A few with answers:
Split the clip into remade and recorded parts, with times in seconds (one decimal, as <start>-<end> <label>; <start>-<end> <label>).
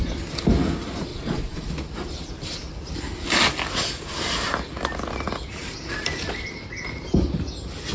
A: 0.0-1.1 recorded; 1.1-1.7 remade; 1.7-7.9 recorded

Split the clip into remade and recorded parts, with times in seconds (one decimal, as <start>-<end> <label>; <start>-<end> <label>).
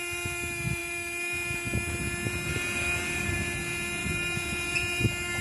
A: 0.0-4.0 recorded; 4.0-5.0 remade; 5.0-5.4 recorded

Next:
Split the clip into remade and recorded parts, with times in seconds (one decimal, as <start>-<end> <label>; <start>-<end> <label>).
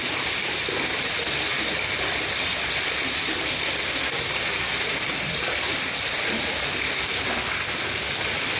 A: 0.0-8.6 recorded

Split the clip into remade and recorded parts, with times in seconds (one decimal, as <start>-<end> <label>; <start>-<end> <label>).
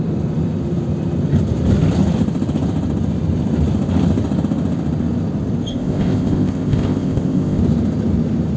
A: 0.0-5.7 recorded; 5.7-7.6 remade; 7.6-8.6 recorded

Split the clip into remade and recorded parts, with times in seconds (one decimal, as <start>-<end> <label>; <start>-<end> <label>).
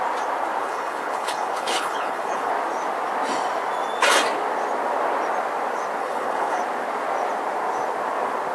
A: 0.0-0.6 recorded; 0.6-2.5 remade; 2.5-6.0 recorded; 6.0-6.6 remade; 6.6-8.5 recorded